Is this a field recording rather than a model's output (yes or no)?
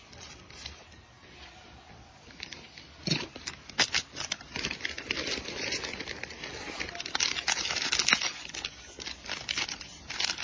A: yes